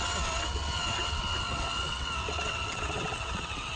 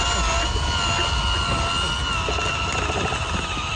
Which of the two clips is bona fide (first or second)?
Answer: second